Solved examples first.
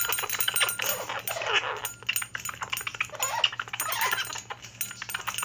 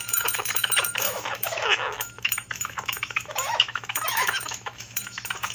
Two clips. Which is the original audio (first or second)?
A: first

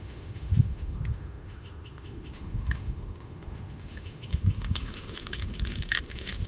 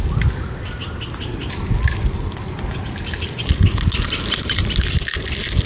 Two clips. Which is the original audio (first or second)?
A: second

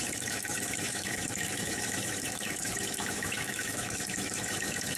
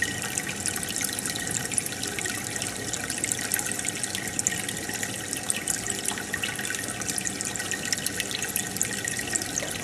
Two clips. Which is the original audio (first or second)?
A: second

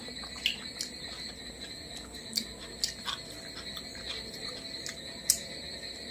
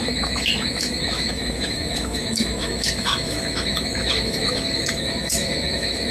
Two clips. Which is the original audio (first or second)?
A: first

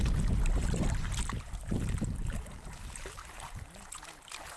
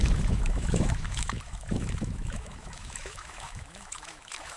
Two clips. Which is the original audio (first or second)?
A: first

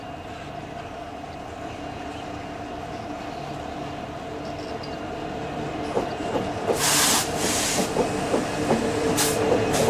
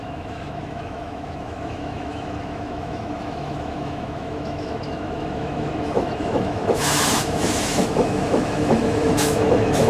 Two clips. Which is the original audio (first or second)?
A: first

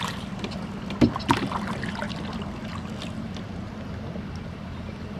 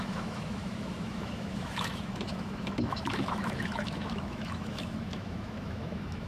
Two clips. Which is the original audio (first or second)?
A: first